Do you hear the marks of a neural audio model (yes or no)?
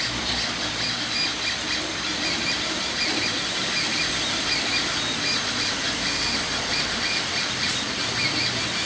yes